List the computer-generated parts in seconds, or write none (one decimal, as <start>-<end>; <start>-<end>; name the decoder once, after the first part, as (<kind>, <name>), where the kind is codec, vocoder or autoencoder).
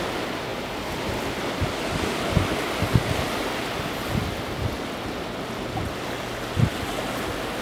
0.5-1.1 (vocoder, BigVGAN v2)